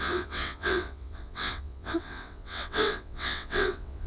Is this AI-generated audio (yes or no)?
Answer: yes